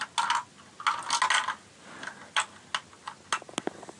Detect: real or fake real